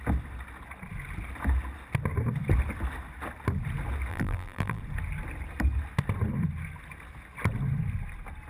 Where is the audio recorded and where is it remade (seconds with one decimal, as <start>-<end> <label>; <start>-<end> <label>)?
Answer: 0.0-4.1 recorded; 4.1-4.8 remade; 4.8-8.5 recorded